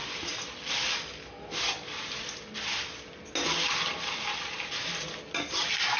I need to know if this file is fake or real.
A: real